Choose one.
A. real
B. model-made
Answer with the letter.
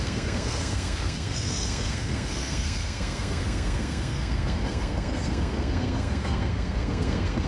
B